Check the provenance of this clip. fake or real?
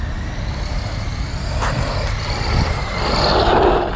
real